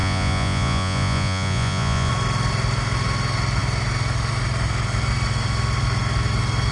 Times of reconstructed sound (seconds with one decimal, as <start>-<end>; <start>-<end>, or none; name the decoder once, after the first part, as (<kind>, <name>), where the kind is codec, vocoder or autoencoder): 0.0-2.1 (vocoder, Vocos)